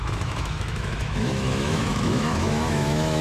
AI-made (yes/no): yes